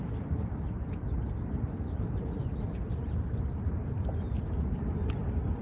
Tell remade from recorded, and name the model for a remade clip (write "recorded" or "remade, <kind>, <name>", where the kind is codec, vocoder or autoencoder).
recorded